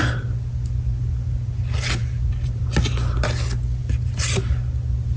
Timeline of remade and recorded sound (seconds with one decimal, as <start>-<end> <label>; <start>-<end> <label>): 0.0-5.2 recorded